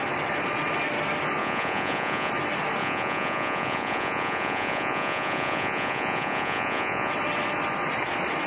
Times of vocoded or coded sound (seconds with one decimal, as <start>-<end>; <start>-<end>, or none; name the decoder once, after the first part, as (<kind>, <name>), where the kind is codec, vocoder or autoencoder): 1.4-2.3 (vocoder, Vocos); 2.8-7.1